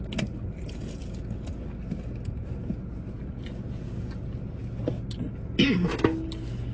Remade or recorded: recorded